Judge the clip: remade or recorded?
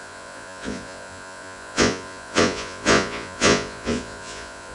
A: remade